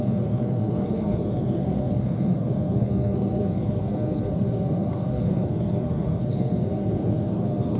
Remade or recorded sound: remade